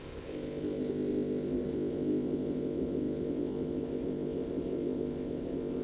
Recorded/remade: remade